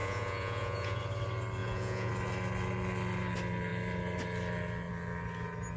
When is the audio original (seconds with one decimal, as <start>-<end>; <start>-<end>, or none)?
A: 1.0-1.6; 2.1-5.8